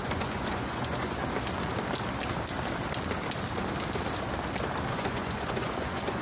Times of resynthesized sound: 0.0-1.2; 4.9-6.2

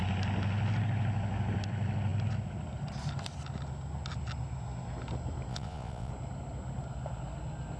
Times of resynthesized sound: 5.5-6.1

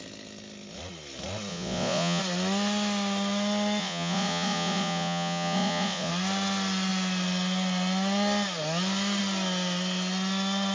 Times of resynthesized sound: 1.5-2.2; 3.8-6.1

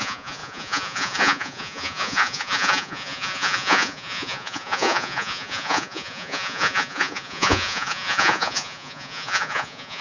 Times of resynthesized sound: 0.0-10.0

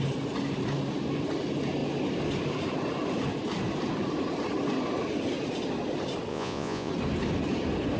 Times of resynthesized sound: 6.3-6.9

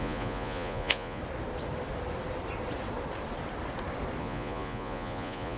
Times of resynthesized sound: 0.0-1.2; 4.2-5.6